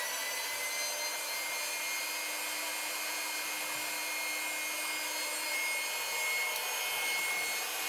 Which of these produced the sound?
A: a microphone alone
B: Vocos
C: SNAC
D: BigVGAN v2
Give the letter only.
A